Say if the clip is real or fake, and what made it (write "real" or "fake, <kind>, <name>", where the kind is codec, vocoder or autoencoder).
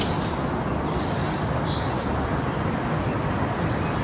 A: real